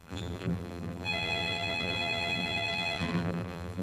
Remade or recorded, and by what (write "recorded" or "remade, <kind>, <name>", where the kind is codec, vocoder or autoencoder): remade, vocoder, BigVGAN v2